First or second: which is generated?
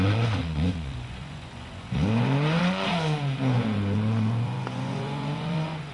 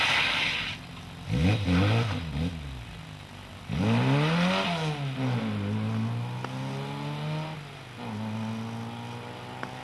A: first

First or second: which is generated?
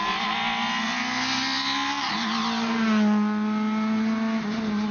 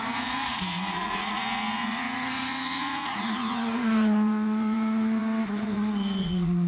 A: second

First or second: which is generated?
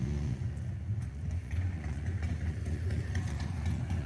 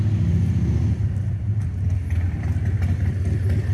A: first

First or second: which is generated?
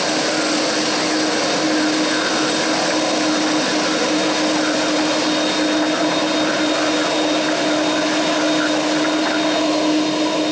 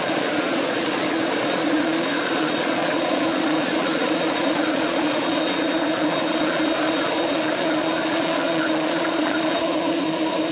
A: second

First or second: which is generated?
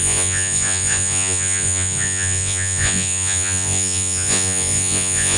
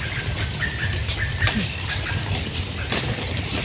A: first